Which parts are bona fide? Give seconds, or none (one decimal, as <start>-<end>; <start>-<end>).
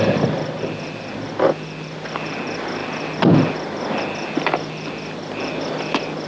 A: 0.0-6.3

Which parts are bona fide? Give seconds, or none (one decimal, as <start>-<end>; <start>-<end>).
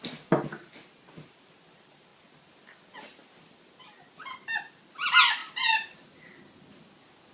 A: 0.0-7.3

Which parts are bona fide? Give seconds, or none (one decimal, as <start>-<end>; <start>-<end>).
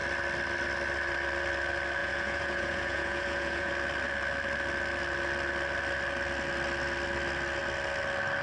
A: 0.0-2.0; 3.7-8.4